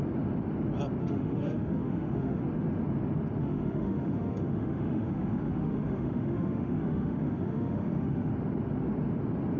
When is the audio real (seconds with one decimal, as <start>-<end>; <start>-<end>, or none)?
0.0-1.0; 2.4-3.4; 8.3-9.6